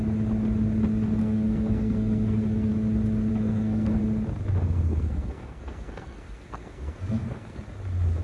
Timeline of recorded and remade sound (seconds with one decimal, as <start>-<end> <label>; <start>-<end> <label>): 0.0-1.2 recorded; 1.2-2.7 remade; 2.7-3.3 recorded; 3.3-4.0 remade; 4.0-4.6 recorded; 4.6-7.6 remade; 7.6-8.2 recorded